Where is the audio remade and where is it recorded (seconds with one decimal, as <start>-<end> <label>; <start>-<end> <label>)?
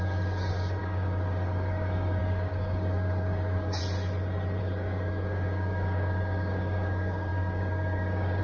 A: 0.0-3.8 remade; 3.8-4.6 recorded; 4.6-8.4 remade